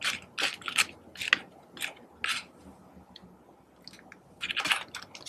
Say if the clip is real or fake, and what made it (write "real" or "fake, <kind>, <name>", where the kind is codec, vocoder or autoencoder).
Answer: real